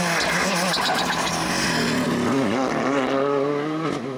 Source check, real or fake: real